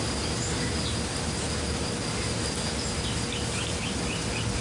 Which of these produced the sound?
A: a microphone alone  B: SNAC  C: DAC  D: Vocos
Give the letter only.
A